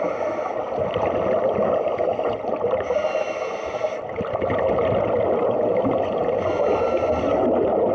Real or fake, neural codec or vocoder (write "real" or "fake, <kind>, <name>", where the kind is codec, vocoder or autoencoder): real